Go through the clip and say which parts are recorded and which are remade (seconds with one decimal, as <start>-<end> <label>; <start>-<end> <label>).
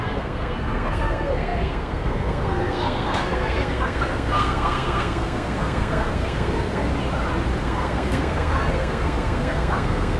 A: 0.0-6.9 remade; 6.9-7.6 recorded; 7.6-10.2 remade